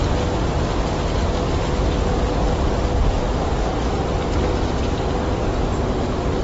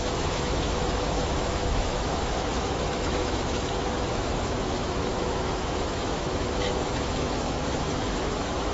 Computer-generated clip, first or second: second